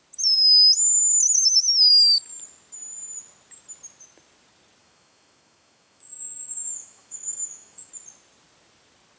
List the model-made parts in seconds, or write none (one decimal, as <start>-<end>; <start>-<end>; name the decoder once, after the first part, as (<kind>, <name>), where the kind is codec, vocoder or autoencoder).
1.2-1.9 (autoencoder, DAC-VAE); 4.8-7.9